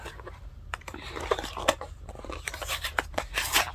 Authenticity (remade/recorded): remade